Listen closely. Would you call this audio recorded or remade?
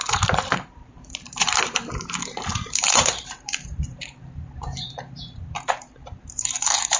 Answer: remade